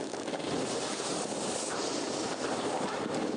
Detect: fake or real real